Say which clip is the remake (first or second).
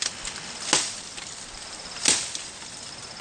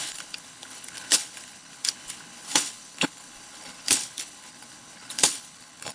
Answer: second